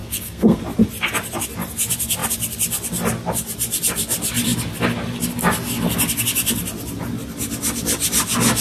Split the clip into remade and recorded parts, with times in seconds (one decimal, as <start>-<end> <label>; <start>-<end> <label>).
0.0-0.6 remade; 0.6-8.6 recorded